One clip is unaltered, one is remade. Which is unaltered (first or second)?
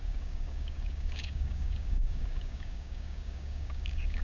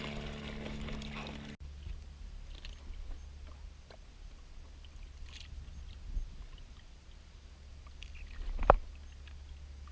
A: second